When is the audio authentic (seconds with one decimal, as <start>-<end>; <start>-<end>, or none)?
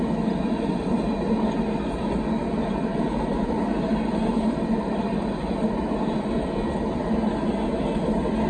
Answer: 0.0-2.9; 5.8-8.5